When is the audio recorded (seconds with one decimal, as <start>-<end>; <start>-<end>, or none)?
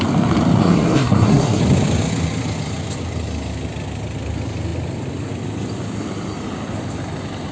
0.0-0.6; 1.6-7.5